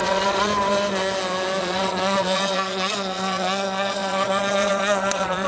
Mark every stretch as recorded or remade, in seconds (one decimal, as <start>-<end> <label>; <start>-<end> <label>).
0.0-0.5 remade; 0.5-1.6 recorded; 1.6-5.5 remade